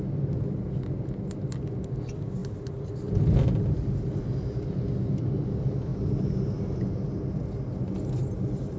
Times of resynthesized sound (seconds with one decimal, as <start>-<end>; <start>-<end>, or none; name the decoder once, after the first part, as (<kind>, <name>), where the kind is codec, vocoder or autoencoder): none